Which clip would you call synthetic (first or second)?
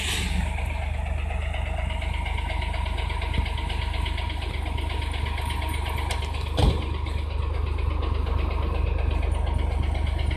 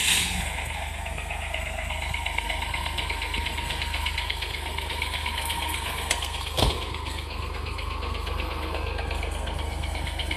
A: second